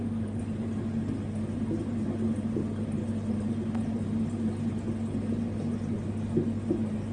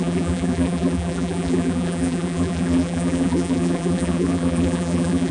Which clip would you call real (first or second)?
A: first